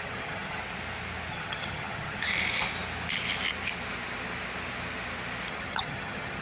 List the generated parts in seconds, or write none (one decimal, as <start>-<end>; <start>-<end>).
0.0-0.6; 1.3-2.3; 5.5-6.4